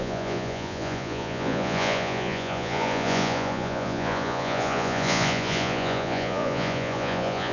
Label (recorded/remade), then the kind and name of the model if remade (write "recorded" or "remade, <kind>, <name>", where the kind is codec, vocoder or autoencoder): remade, vocoder, Vocos